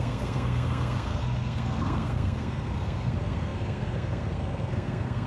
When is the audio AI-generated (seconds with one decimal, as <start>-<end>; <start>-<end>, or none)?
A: 0.0-5.3